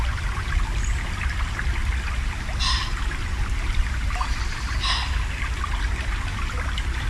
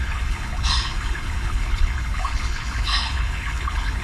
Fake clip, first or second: second